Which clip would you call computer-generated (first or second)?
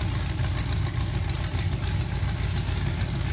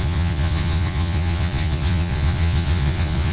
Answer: second